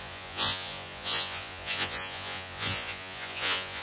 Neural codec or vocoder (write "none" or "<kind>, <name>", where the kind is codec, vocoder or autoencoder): vocoder, Vocos